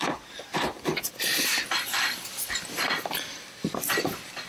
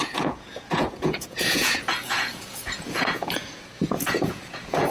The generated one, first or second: second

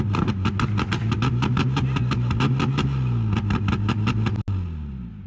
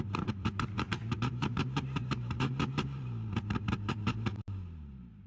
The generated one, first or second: second